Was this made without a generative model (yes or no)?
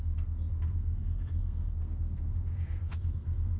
no